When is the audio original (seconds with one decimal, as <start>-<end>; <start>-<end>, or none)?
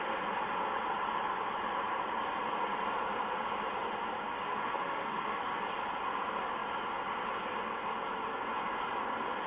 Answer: 0.0-4.2; 5.6-9.5